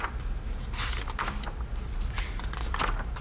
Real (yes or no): yes